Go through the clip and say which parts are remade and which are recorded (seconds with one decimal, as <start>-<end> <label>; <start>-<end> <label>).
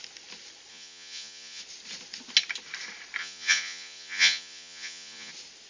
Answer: 0.0-0.7 recorded; 0.7-1.6 remade; 1.6-3.2 recorded; 3.2-5.3 remade; 5.3-5.7 recorded